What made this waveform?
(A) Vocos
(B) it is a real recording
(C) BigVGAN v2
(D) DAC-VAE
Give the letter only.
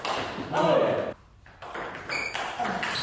B